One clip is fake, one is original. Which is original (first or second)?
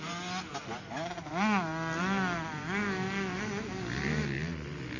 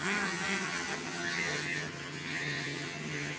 first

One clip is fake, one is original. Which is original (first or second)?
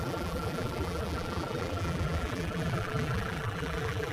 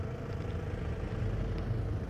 second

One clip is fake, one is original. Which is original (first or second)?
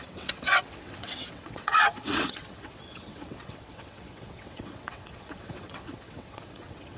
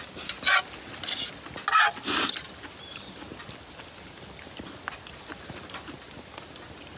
second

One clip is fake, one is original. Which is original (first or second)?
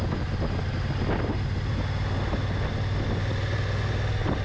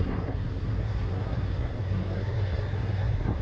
first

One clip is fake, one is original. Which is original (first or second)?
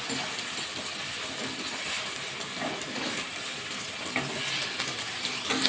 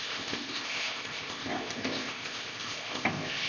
first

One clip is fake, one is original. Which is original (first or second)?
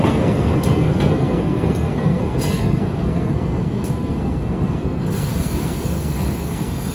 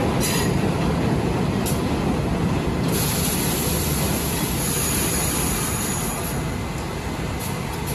second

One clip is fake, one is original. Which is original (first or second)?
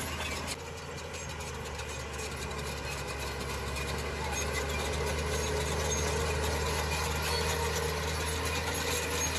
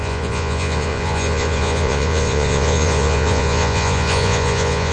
first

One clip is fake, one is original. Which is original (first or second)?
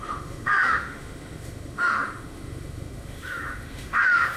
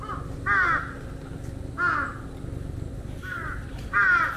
second